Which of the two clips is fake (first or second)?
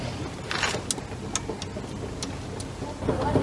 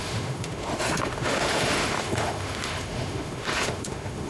second